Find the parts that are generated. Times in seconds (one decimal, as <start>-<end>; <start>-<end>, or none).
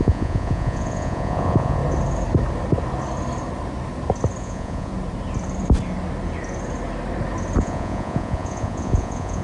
0.0-1.8; 4.4-4.9; 7.6-9.4